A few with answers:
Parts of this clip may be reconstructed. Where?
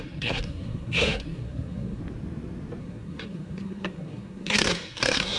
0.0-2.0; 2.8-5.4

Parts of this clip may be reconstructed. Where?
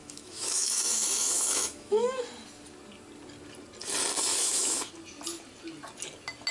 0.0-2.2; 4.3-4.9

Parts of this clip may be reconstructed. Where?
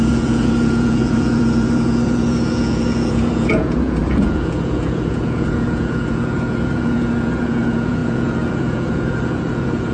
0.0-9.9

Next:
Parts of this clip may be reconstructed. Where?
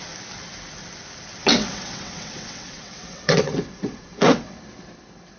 1.4-4.6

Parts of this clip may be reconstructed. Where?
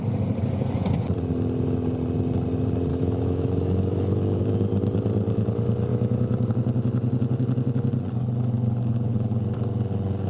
2.9-4.4; 5.9-6.5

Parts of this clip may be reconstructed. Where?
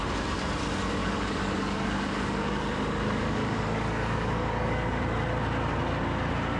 1.0-5.0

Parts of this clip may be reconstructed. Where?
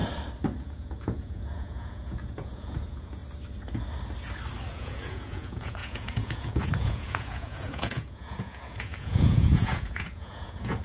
0.6-3.2; 4.7-10.8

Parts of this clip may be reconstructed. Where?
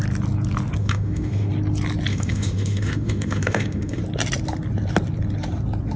0.8-1.5; 2.1-4.0